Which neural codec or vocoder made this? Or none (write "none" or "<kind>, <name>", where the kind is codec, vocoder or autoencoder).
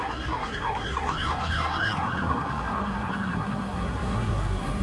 codec, SNAC